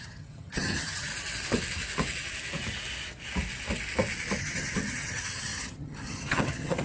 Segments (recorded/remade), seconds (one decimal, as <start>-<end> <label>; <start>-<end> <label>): 0.0-1.1 remade; 1.1-4.4 recorded; 4.4-6.8 remade